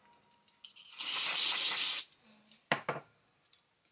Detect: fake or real real